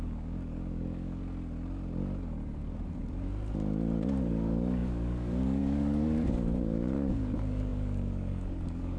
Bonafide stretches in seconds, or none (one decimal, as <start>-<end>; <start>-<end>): 1.2-4.3